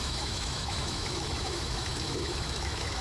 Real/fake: fake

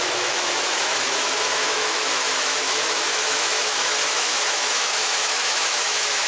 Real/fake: fake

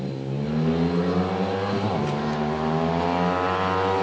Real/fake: real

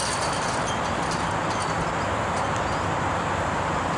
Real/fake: real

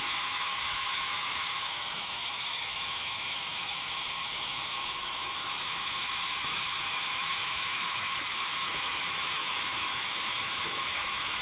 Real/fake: fake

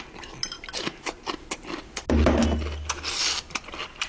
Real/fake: real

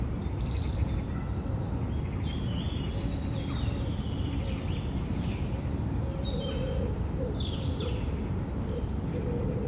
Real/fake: real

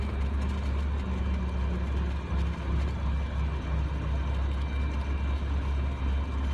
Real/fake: real